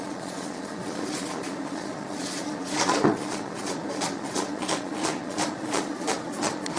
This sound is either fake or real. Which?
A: fake